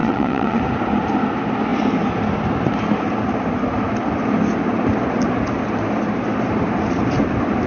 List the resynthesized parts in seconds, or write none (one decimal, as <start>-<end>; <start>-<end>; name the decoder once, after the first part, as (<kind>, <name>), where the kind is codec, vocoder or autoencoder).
0.0-0.6 (vocoder, WaveNeXt)